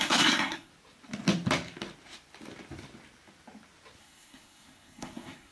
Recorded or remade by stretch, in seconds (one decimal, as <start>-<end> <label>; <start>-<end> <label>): 0.0-0.7 remade; 0.7-4.0 recorded; 4.0-5.5 remade